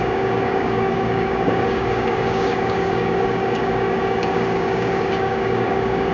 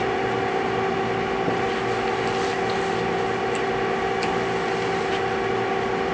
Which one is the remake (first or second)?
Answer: first